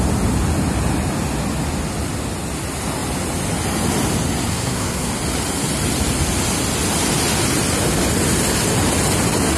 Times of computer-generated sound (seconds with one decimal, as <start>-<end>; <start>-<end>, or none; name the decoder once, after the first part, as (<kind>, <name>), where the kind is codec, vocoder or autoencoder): 4.5-5.1 (codec, SNAC)